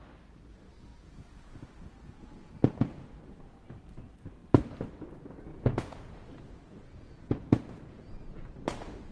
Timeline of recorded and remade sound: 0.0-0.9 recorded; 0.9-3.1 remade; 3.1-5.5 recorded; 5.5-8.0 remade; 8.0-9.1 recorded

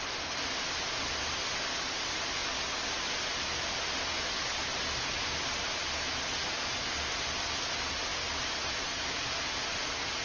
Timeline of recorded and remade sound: 0.0-10.2 recorded

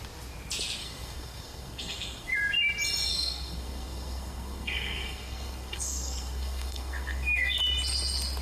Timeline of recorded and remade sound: 0.0-0.8 recorded; 0.8-2.3 remade; 2.3-3.1 recorded; 3.1-7.6 remade; 7.6-8.4 recorded

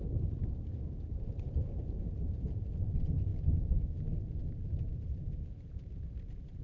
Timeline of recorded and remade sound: 0.0-6.6 remade

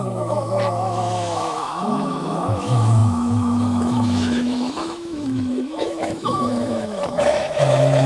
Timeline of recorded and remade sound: 0.0-8.1 remade